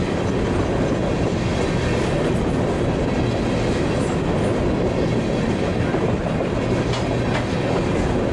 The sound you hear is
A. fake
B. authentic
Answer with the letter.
B